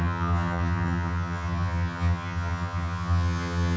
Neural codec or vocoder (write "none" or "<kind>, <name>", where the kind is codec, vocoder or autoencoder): vocoder, HiFi-GAN